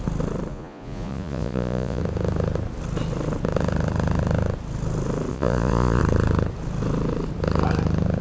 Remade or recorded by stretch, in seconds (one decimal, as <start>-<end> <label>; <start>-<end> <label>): 0.0-0.5 recorded; 0.5-2.0 remade; 2.0-5.3 recorded; 5.3-6.0 remade; 6.0-8.2 recorded